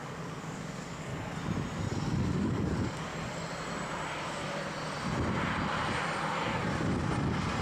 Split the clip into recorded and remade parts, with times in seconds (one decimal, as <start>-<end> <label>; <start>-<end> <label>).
0.0-1.1 remade; 1.1-2.2 recorded; 2.2-3.1 remade; 3.1-7.6 recorded